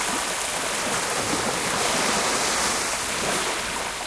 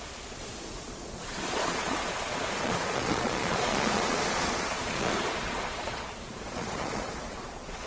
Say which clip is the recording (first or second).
first